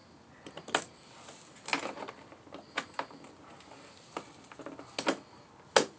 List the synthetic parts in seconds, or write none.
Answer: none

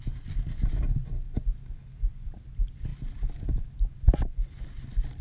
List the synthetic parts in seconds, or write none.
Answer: none

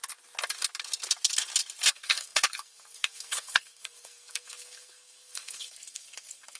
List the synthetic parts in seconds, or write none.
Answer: 1.9-6.6 (codec, SNAC)

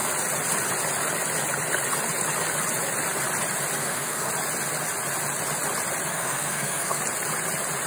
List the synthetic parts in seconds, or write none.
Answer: 3.8-4.3 (codec, SNAC); 6.1-7.0

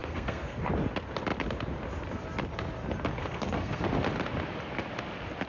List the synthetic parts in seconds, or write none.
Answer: 0.0-0.6 (codec, SNAC); 3.2-3.8

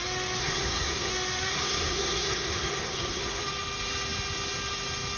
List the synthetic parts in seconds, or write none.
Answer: 0.4-1.1 (codec, SNAC); 1.5-3.4

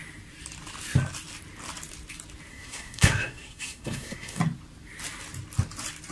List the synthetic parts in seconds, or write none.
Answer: 2.5-4.4 (codec, SNAC)

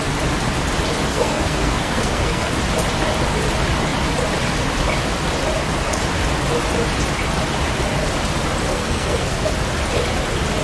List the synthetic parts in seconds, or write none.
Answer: 1.1-2.5 (codec, SNAC); 8.7-9.5